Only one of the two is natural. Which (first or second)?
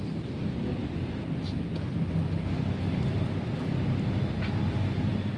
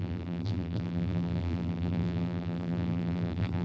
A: first